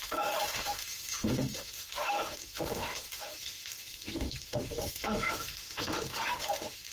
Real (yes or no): no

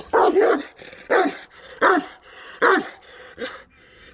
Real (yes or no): no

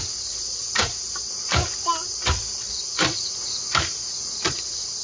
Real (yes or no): yes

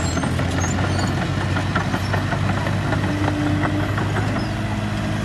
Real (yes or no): yes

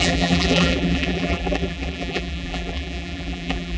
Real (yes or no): no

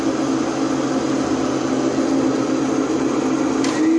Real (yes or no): yes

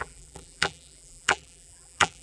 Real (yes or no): no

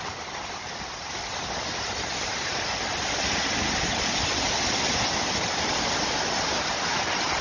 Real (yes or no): yes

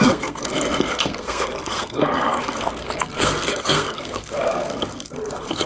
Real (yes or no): no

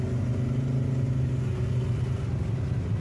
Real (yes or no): yes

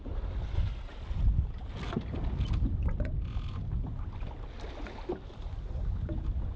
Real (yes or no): yes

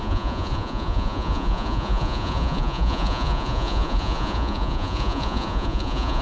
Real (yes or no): no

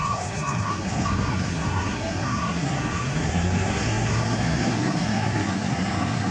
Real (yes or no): no